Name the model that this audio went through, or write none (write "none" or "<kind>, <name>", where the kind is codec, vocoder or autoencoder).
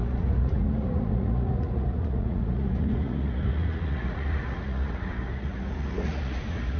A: vocoder, Vocos